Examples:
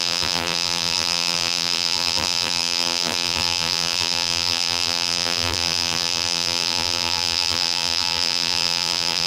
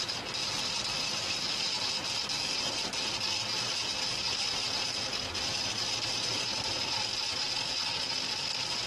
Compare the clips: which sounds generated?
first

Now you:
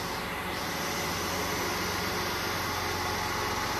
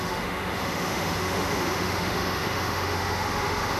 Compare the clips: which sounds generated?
second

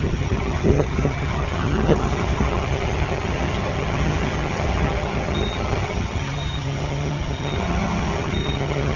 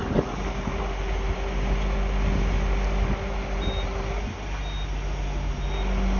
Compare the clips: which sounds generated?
first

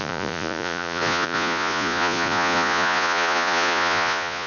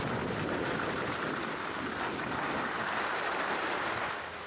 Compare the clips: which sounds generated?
first